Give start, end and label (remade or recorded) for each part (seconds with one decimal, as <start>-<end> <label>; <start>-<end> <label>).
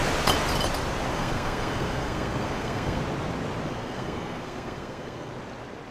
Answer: 0.0-1.1 recorded; 1.1-3.0 remade; 3.0-3.7 recorded; 3.7-5.3 remade; 5.3-5.9 recorded